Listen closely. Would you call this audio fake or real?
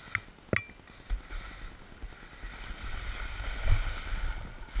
real